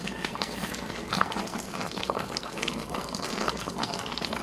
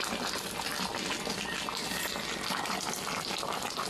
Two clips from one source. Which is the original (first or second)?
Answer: second